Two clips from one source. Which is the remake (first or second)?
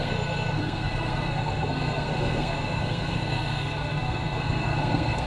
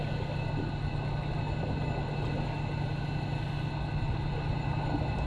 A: first